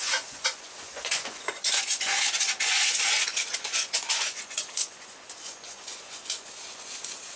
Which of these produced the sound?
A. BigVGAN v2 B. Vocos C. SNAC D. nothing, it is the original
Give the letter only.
B